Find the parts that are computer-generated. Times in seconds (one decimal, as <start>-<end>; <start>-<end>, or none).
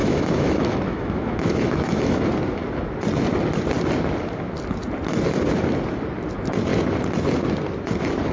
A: 0.0-2.2